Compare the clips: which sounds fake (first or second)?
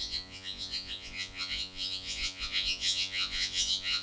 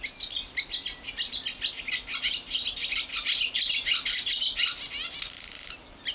first